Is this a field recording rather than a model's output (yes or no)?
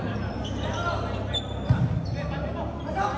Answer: yes